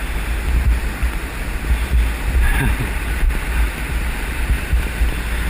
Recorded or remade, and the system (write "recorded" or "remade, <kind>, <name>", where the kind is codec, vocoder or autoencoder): recorded